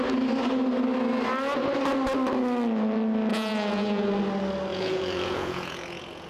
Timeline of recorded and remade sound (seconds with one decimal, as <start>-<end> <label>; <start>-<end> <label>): 0.0-3.3 recorded; 3.3-4.1 remade; 4.1-4.7 recorded; 4.7-6.3 remade